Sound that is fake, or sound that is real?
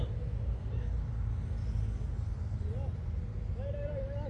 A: real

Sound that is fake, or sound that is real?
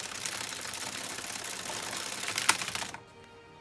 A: real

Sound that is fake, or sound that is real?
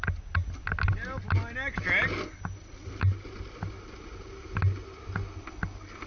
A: real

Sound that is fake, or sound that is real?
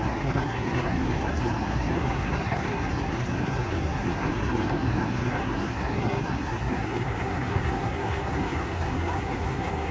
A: fake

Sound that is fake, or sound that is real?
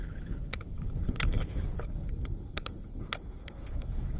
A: fake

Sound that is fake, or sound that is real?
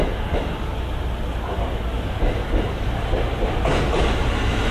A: real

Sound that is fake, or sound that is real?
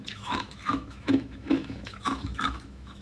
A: fake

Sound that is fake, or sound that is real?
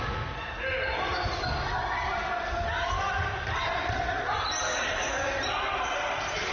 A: real